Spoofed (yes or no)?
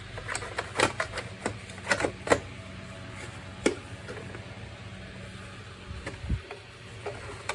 no